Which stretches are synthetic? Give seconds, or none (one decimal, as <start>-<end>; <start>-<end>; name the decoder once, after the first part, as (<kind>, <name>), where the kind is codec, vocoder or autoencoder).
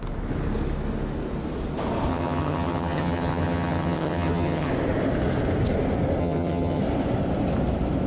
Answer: 2.1-4.7 (vocoder, HiFi-GAN); 6.2-6.8